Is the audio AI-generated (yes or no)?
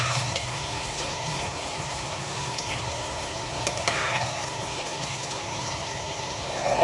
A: yes